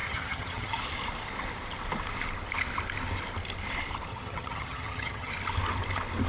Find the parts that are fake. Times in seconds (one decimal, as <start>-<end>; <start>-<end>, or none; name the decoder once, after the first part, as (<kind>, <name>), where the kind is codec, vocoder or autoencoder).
0.0-0.8 (vocoder, HiFi-GAN); 4.1-5.3